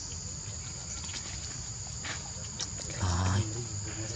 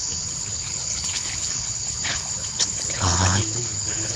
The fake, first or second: second